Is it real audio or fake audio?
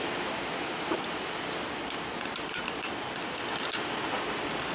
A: real